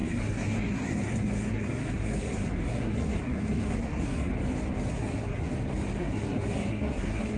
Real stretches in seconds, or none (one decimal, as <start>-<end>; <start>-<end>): 4.3-4.9; 5.5-6.0